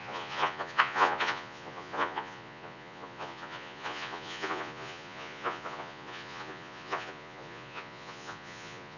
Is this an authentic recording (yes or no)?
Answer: no